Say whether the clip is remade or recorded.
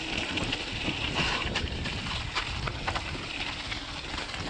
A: recorded